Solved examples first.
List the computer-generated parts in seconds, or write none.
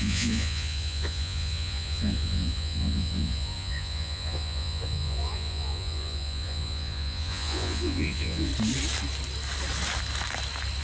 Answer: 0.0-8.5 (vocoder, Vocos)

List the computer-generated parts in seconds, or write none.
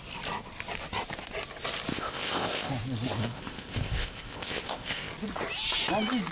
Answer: 1.9-2.7 (codec, ZipCodec); 3.2-5.1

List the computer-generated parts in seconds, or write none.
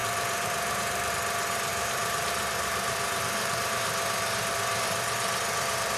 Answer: 0.0-1.1 (vocoder, BigVGAN v2); 1.7-3.7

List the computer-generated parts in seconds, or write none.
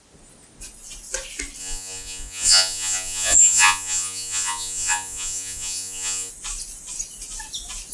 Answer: 1.6-6.3 (vocoder, Vocos)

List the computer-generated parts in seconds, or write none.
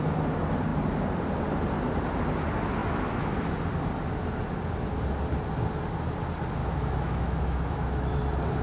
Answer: 6.6-8.2 (autoencoder, DAC-VAE)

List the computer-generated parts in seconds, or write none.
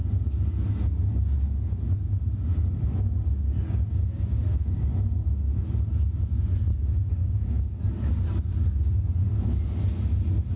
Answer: 6.7-7.8 (codec, DAC)